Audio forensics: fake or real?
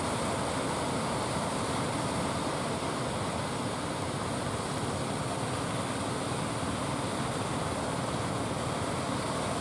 real